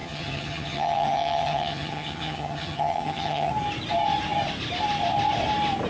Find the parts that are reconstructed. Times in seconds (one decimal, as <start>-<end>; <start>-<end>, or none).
0.0-3.5